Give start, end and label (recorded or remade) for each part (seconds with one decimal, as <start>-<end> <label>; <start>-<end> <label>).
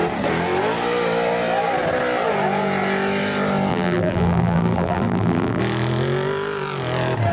0.0-3.7 recorded; 3.7-5.6 remade; 5.6-7.3 recorded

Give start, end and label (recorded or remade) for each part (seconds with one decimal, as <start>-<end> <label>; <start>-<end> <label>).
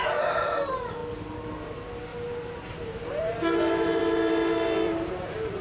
0.0-2.1 recorded; 2.1-5.6 remade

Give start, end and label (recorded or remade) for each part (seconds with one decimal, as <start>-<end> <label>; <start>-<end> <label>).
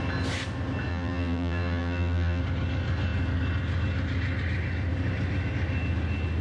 0.0-0.9 recorded; 0.9-2.4 remade; 2.4-6.4 recorded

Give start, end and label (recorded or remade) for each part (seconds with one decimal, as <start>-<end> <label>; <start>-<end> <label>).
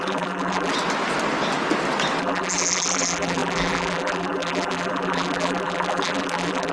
0.0-0.7 remade; 0.7-2.2 recorded; 2.2-6.7 remade